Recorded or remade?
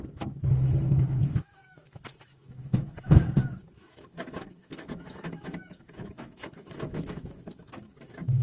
remade